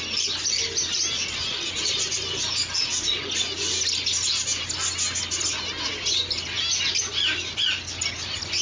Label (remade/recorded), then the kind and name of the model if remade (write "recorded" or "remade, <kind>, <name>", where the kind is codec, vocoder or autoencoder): recorded